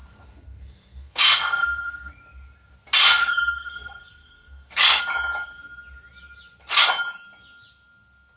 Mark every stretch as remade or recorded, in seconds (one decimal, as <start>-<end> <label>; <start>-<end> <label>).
0.0-2.1 remade; 2.1-3.2 recorded; 3.2-5.0 remade; 5.0-8.4 recorded